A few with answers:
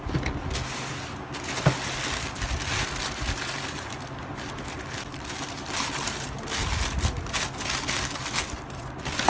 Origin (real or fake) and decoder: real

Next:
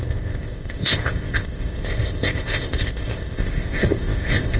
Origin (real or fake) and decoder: fake, codec, ZipCodec